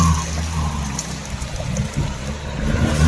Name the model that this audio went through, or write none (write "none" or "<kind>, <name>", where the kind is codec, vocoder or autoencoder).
none